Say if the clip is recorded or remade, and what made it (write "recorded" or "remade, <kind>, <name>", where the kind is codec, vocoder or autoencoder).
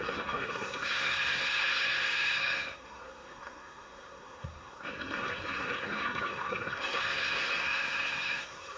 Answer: remade, codec, SNAC